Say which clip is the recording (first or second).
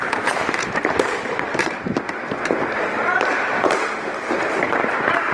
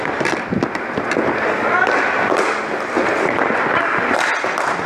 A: second